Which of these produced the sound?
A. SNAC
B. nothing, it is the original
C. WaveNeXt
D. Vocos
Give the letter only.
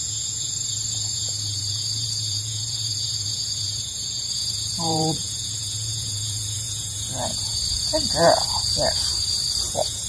D